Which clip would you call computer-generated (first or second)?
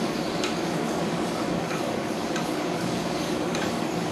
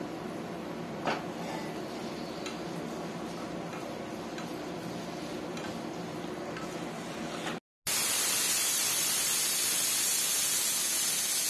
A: first